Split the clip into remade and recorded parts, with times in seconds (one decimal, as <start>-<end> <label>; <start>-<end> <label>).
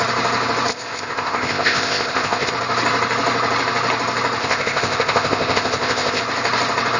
0.0-0.7 recorded; 0.7-2.5 remade; 2.5-4.4 recorded; 4.4-6.2 remade; 6.2-7.0 recorded